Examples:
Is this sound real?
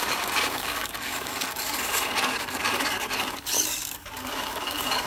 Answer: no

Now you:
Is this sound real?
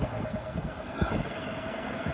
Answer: no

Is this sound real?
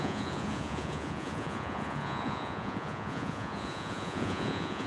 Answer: no